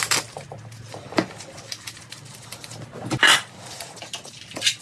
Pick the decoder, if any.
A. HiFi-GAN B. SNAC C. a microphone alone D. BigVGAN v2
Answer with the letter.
C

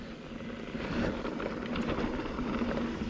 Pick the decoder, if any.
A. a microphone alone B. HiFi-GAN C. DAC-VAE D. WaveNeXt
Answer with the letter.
A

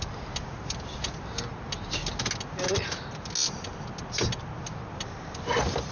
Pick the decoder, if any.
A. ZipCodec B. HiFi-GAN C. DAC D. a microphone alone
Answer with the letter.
D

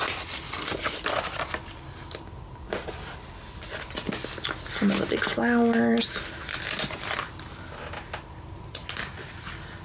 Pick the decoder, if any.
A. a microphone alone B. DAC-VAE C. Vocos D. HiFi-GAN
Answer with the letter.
A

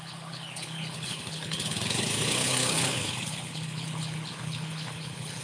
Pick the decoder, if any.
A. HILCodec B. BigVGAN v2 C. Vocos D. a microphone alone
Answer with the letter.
A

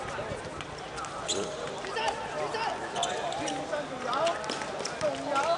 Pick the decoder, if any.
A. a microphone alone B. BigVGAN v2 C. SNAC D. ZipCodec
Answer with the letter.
A